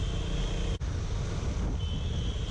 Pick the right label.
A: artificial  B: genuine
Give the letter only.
B